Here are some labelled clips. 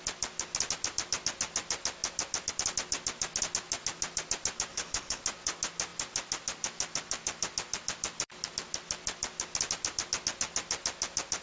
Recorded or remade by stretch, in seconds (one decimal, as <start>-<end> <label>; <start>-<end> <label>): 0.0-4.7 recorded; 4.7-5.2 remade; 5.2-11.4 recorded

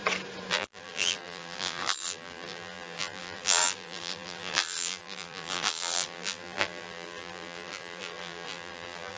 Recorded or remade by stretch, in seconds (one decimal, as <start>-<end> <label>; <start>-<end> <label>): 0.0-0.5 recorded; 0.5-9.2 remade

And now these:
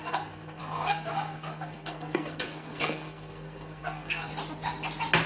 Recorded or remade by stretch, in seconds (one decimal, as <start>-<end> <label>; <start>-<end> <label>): 0.0-4.3 remade; 4.3-5.3 recorded

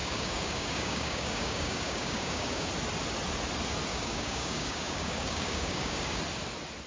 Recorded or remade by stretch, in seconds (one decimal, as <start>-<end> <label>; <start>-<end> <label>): 0.0-2.7 remade; 2.7-3.9 recorded; 3.9-6.2 remade; 6.2-6.9 recorded

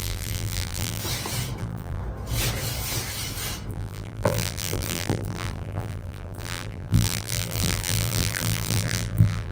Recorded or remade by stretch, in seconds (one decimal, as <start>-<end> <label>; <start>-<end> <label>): 0.0-1.0 remade; 1.0-1.6 recorded; 1.6-2.0 remade; 2.0-3.7 recorded; 3.7-9.5 remade

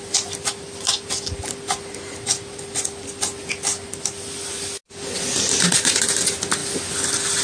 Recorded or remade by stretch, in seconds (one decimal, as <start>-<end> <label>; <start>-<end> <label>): 0.0-7.4 recorded

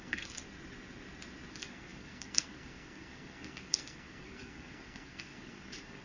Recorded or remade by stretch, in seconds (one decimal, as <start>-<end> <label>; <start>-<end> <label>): 0.0-0.4 remade; 0.4-1.5 recorded; 1.5-6.0 remade